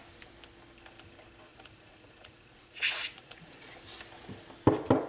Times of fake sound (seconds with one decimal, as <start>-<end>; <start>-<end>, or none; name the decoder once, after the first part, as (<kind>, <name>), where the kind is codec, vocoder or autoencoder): 1.5-3.7 (vocoder, Vocos)